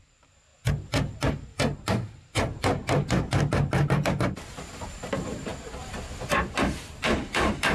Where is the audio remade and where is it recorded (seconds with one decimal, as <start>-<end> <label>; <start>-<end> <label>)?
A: 0.0-0.5 remade; 0.5-1.3 recorded; 1.3-2.8 remade; 2.8-3.5 recorded; 3.5-5.5 remade; 5.5-6.9 recorded; 6.9-7.7 remade